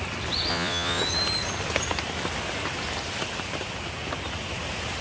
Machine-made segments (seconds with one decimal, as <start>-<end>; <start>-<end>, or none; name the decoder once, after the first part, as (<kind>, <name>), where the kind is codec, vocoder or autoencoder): 0.5-1.0 (vocoder, Vocos)